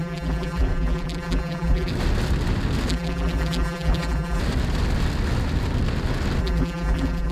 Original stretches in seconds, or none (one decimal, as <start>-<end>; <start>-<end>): 1.9-2.9; 4.4-6.4